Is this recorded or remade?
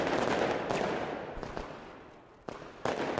recorded